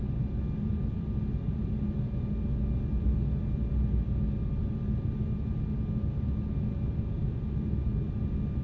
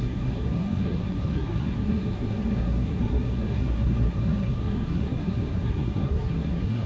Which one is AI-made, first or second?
second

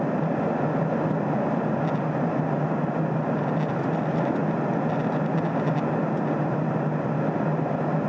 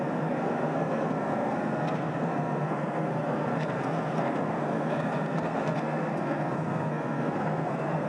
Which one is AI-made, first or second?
second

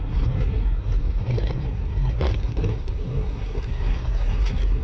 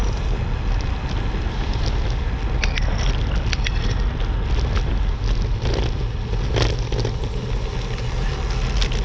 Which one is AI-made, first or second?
first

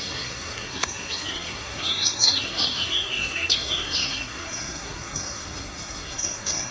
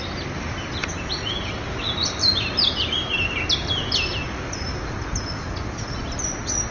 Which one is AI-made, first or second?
first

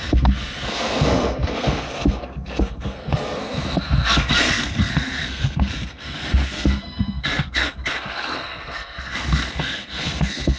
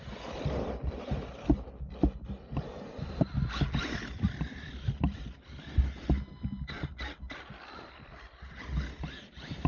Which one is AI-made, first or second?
first